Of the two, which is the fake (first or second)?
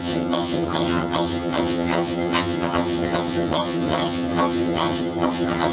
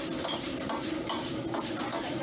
first